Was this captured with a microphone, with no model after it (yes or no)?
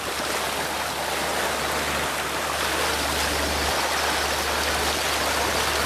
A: yes